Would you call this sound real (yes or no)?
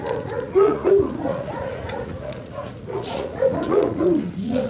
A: no